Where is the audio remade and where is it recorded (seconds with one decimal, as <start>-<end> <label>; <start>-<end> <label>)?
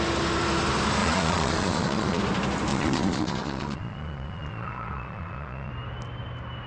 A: 0.0-1.0 recorded; 1.0-2.2 remade; 2.2-2.7 recorded; 2.7-5.7 remade; 5.7-6.7 recorded